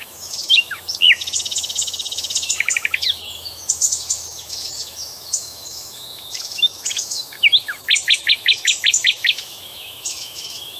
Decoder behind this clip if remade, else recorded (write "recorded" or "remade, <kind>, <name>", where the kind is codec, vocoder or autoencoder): remade, autoencoder, DAC-VAE